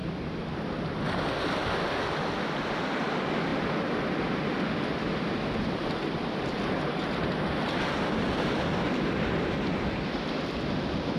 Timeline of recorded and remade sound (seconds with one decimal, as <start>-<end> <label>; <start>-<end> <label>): 0.0-11.2 recorded